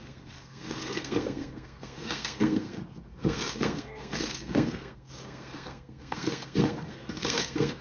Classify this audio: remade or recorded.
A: remade